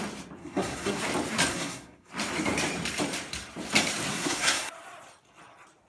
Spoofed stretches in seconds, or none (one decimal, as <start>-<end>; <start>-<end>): 0.4-1.0; 1.5-2.1; 4.1-4.7

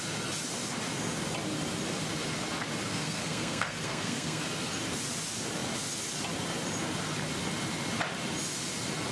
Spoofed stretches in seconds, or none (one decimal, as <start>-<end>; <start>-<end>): 2.9-4.4

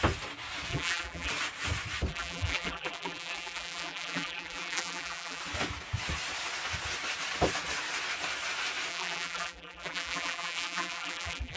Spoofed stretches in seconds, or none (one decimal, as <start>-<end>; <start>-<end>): 0.7-1.3; 2.1-5.4; 8.9-11.6

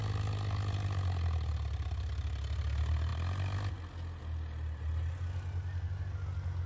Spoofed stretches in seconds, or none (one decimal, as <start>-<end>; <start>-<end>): none

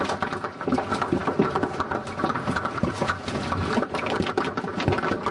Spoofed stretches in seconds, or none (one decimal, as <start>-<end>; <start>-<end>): none

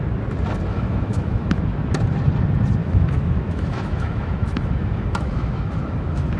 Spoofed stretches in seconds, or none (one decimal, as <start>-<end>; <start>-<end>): 0.7-1.6; 2.8-6.4

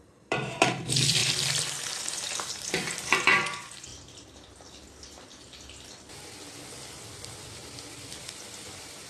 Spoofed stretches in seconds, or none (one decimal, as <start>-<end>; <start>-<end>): 0.0-1.2; 2.0-3.9; 7.1-9.1

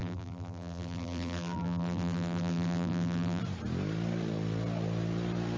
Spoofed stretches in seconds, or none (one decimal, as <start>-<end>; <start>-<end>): 0.0-3.4